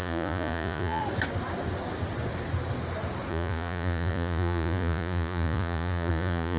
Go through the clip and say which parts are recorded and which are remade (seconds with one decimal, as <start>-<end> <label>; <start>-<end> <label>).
0.0-1.0 remade; 1.0-3.3 recorded; 3.3-6.6 remade